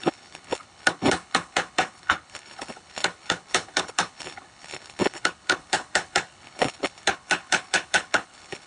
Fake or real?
fake